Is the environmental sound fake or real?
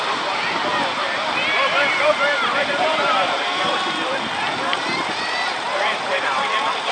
fake